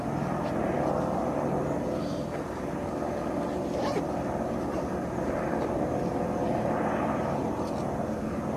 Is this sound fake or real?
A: real